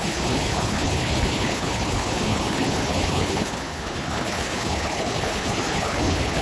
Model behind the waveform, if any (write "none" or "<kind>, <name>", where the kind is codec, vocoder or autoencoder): codec, HILCodec